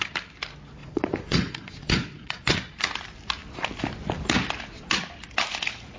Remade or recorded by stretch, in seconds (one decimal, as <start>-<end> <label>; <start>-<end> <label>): 0.0-0.8 recorded; 0.8-2.8 remade; 2.8-6.0 recorded